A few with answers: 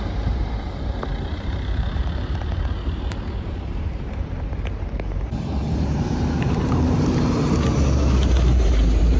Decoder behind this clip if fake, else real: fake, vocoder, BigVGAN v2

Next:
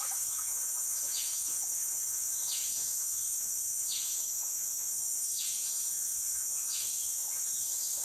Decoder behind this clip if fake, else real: fake, autoencoder, DAC-VAE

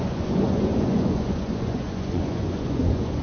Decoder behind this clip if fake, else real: fake, vocoder, Vocos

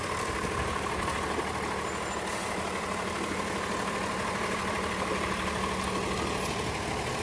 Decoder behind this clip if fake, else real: real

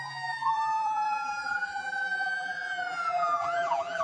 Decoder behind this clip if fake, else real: fake, vocoder, BigVGAN v2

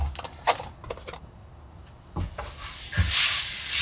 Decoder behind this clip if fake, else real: real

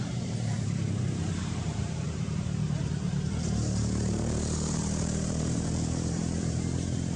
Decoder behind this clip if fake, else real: fake, vocoder, BigVGAN v2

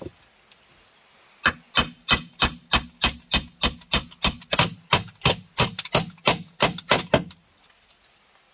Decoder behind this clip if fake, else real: real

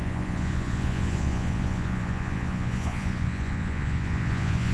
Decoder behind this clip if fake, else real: fake, vocoder, Vocos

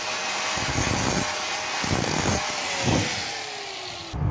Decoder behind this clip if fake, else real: real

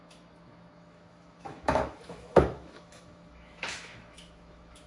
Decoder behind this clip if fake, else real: fake, autoencoder, DAC-VAE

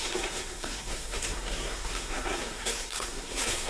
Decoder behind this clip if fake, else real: fake, codec, SNAC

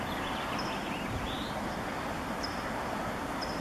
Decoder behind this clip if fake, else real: fake, vocoder, BigVGAN v2